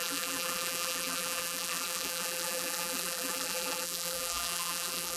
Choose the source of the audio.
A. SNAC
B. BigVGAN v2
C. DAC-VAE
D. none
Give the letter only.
B